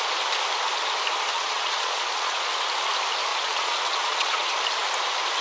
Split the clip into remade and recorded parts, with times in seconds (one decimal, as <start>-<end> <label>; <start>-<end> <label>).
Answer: 0.0-1.3 recorded; 1.3-2.5 remade; 2.5-3.3 recorded; 3.3-4.5 remade; 4.5-5.4 recorded